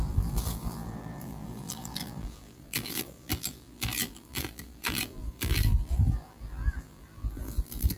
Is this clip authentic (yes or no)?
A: no